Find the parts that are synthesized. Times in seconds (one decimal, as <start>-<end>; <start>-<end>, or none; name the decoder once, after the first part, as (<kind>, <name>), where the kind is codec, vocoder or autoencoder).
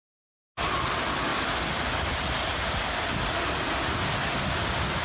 none